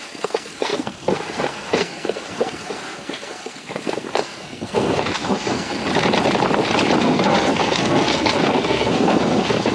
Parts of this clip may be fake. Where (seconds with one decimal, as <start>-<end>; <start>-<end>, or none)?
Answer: 0.0-5.8; 7.0-9.7